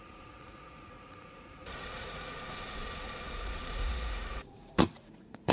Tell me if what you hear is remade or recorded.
remade